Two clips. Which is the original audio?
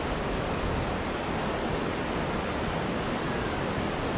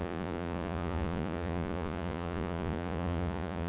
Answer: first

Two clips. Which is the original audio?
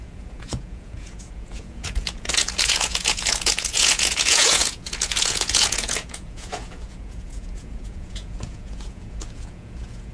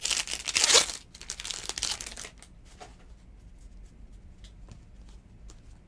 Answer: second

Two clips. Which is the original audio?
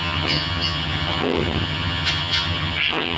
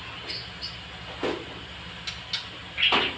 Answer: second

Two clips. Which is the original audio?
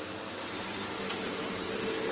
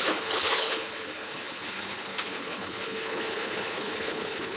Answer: first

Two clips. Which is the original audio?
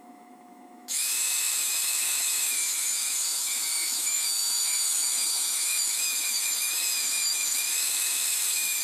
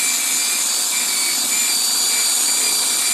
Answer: second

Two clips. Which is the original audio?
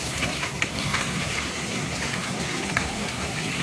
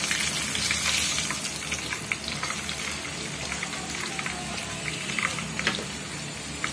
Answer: second